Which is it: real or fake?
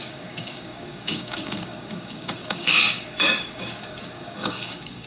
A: fake